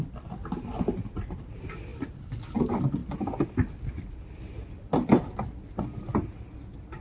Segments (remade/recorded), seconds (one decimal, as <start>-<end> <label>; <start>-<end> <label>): 0.0-7.0 recorded

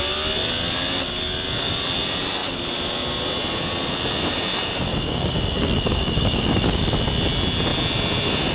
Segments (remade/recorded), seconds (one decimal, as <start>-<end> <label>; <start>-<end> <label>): 0.0-4.9 recorded; 4.9-6.8 remade; 6.8-8.5 recorded

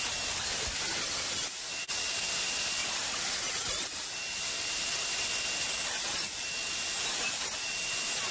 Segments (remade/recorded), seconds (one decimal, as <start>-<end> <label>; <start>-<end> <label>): 0.0-8.3 recorded